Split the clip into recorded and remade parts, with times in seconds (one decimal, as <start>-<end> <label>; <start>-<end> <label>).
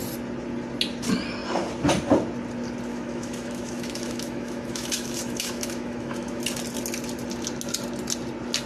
0.0-2.9 recorded; 2.9-6.4 remade; 6.4-8.7 recorded